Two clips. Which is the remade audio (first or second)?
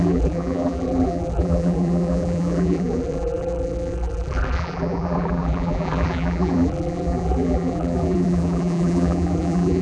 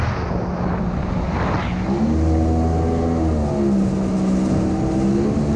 first